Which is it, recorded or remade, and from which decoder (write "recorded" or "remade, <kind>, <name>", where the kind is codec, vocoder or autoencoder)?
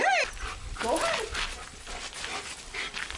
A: recorded